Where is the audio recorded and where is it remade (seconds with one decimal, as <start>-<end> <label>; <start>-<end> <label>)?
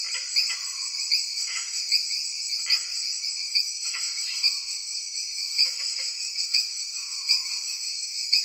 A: 0.0-1.3 recorded; 1.3-1.8 remade; 1.8-3.4 recorded; 3.4-8.4 remade